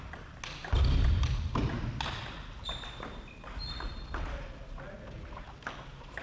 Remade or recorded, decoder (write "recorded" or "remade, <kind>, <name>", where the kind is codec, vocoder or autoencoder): recorded